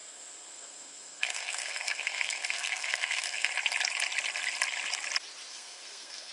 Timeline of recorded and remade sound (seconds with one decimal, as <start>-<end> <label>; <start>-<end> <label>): 0.0-3.5 remade; 3.5-5.5 recorded; 5.5-6.3 remade